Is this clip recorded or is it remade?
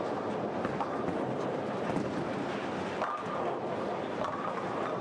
recorded